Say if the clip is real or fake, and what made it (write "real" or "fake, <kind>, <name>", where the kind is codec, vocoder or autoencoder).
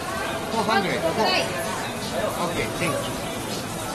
real